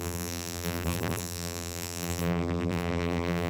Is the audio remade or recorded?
remade